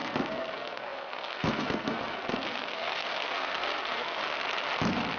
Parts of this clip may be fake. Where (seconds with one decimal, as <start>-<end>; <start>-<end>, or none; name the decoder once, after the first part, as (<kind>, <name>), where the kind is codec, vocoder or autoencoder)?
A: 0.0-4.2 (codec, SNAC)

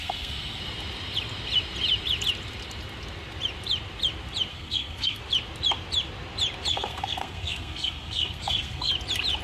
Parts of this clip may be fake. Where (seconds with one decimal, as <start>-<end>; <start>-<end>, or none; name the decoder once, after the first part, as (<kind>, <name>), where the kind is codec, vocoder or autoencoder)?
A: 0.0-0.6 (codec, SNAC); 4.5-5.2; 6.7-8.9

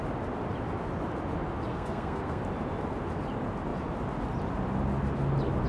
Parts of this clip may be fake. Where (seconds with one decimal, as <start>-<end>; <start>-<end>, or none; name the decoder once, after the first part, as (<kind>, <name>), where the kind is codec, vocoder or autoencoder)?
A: 1.7-2.4 (codec, SNAC)

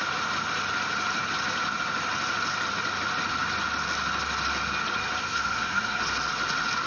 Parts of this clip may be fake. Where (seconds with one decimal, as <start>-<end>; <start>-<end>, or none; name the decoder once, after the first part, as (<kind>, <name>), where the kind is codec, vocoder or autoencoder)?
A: 5.2-6.0 (codec, SNAC)